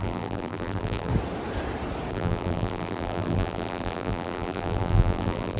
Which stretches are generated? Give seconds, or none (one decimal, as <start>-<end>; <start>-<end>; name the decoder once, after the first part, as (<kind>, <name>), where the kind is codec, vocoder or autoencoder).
0.0-1.1 (vocoder, BigVGAN v2); 2.1-5.6